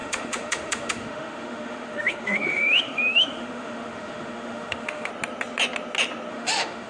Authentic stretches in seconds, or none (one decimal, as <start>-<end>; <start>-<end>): 5.1-6.3